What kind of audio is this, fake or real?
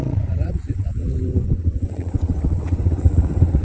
fake